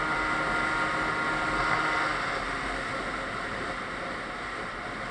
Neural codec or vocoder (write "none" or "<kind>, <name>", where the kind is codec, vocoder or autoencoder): none